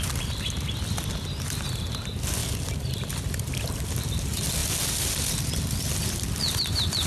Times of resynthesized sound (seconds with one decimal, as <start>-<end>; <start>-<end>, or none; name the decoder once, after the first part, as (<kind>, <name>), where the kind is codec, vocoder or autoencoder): none